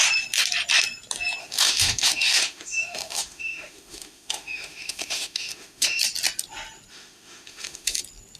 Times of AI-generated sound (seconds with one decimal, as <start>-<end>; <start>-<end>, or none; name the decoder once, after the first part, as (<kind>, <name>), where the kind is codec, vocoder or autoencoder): 1.4-6.0 (autoencoder, DAC-VAE); 6.9-8.0

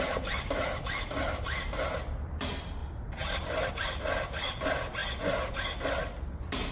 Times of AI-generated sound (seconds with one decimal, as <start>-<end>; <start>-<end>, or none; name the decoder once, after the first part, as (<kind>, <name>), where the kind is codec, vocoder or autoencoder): none

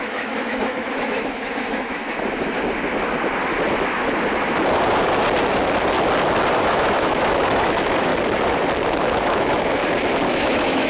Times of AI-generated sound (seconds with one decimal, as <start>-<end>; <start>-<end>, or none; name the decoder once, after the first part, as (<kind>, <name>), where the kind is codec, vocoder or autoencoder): 0.0-2.0 (autoencoder, DAC-VAE); 6.7-8.1; 9.0-9.8; 10.3-10.9

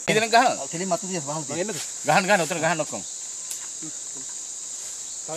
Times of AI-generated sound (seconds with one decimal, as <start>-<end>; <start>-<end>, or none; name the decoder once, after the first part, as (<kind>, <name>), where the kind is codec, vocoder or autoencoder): none

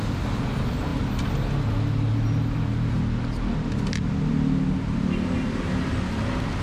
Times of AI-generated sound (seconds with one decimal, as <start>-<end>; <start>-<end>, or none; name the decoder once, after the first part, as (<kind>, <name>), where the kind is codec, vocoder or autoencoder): none

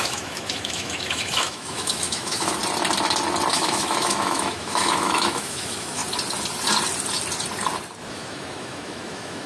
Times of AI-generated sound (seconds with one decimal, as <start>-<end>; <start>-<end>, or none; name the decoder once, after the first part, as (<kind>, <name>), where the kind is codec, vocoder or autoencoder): 0.0-2.6 (autoencoder, DAC-VAE); 3.5-6.0; 8.1-9.5

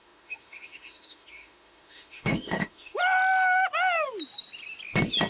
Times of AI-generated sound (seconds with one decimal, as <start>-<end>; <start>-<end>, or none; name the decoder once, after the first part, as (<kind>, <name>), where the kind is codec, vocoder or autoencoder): 0.0-3.0 (autoencoder, DAC-VAE)

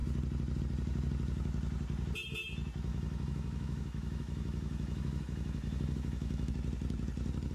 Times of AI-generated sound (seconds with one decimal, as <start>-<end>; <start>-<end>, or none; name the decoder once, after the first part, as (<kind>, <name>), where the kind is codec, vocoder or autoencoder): 2.9-6.5 (autoencoder, DAC-VAE)